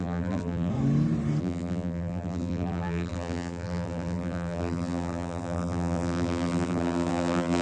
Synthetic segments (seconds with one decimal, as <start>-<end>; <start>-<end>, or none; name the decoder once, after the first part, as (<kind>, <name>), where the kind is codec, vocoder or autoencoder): 0.0-0.7 (vocoder, BigVGAN v2); 1.4-7.6